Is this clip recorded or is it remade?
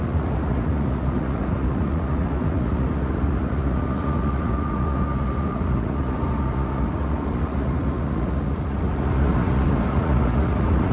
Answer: remade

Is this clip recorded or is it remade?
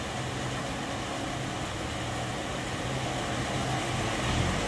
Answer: recorded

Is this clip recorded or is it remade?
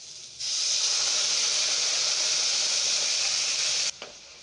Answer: recorded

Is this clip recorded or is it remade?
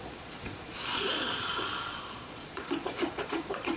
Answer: remade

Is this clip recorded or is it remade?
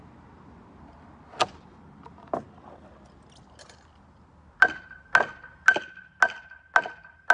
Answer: recorded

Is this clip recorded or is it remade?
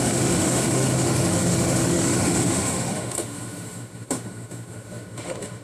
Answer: remade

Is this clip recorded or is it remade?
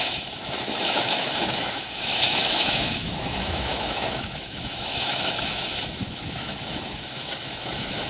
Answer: remade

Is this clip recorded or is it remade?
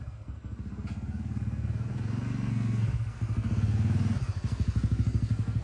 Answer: remade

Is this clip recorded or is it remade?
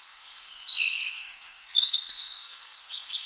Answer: remade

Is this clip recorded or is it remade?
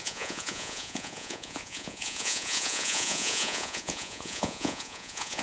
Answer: remade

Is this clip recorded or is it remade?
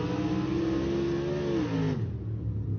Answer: recorded